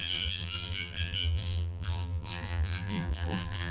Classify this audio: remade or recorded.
remade